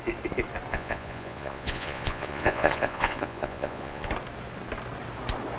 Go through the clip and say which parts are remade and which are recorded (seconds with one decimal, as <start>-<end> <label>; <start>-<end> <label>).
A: 0.0-0.7 recorded; 0.7-4.1 remade; 4.1-5.6 recorded